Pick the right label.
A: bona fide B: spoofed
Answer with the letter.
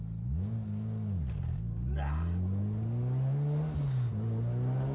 A